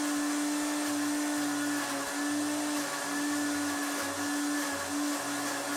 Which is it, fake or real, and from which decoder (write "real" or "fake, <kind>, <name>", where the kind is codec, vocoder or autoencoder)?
real